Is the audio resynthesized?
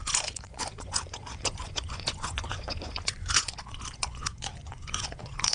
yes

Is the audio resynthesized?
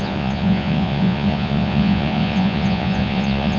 yes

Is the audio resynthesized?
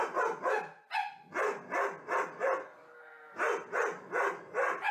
no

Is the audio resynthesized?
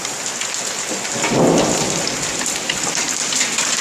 no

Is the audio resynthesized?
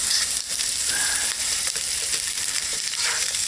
yes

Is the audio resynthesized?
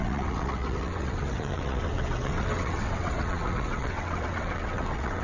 yes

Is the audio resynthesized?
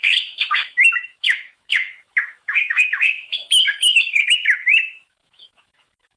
yes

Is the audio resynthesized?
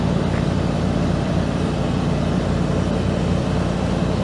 yes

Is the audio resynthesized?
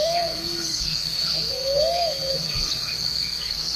yes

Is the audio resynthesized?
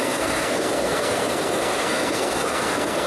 yes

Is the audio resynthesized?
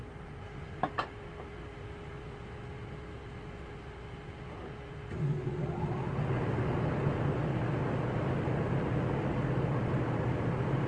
no